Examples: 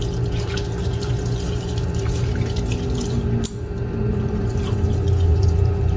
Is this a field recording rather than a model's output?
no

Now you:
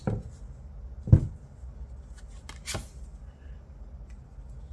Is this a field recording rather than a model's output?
yes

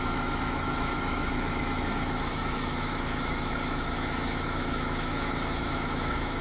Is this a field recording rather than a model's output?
no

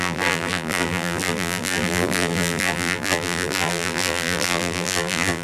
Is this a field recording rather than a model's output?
no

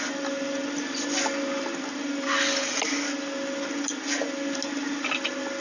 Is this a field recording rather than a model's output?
yes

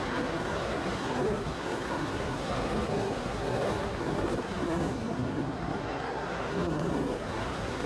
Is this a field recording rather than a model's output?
no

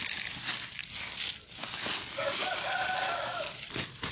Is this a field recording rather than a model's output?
yes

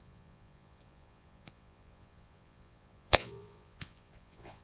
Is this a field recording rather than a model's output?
no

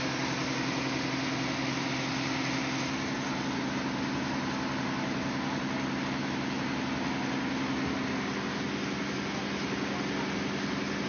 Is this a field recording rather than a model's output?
yes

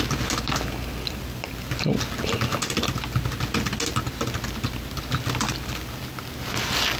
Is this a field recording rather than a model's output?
yes